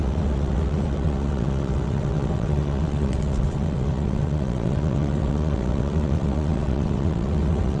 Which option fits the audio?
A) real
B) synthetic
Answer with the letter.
B